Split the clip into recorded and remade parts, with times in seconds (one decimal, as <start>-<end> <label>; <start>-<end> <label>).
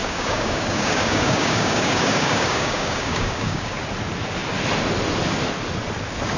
0.0-3.8 remade; 3.8-6.4 recorded